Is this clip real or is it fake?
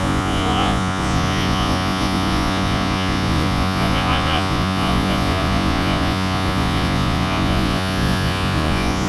fake